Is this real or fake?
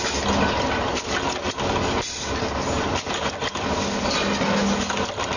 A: real